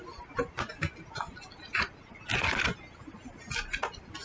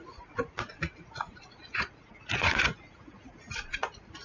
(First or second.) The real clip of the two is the first